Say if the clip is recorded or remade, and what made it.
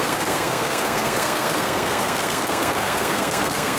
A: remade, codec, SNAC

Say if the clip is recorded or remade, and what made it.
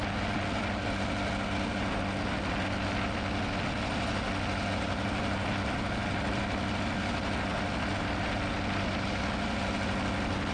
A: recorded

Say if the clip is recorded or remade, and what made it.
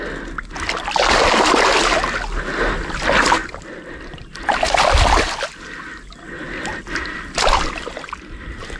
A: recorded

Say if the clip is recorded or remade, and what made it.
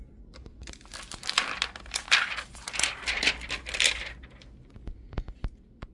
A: recorded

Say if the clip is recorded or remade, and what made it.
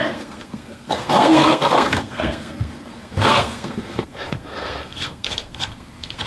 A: remade, codec, SNAC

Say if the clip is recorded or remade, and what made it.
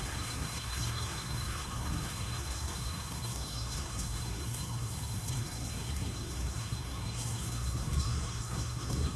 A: remade, codec, SNAC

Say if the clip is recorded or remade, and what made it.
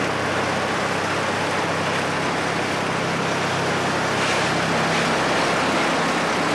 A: recorded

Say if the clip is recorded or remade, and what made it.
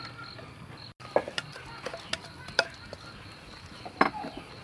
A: recorded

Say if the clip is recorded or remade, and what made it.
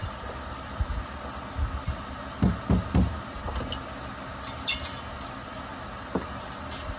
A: recorded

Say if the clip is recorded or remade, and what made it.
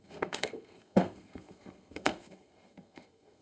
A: remade, codec, SNAC